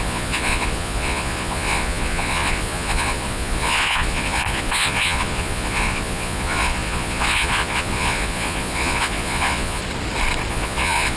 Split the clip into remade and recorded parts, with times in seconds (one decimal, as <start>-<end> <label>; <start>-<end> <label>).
0.0-9.8 remade; 9.8-10.5 recorded; 10.5-11.2 remade